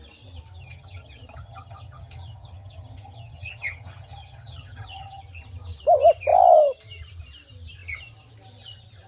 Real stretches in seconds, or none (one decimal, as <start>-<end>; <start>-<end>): 0.0-0.6; 5.2-9.1